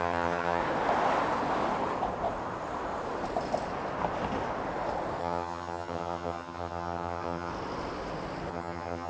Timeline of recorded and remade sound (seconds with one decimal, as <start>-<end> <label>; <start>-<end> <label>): 0.0-0.6 remade; 0.6-5.2 recorded; 5.2-7.5 remade; 7.5-8.5 recorded; 8.5-9.1 remade